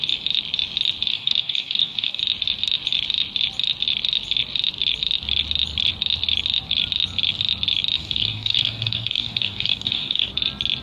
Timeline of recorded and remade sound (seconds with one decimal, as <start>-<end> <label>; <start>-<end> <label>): 0.0-1.1 recorded; 1.1-2.2 remade; 2.2-8.0 recorded; 8.0-10.3 remade; 10.3-10.8 recorded